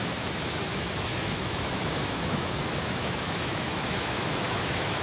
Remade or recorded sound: remade